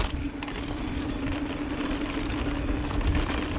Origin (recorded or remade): recorded